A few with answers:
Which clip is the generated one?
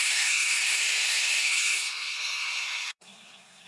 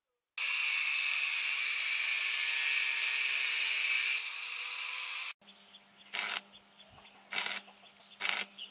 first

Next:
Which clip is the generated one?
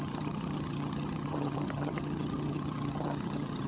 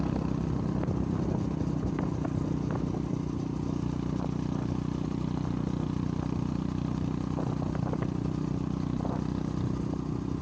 first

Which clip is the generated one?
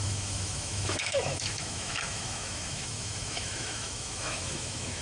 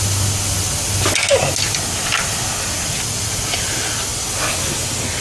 first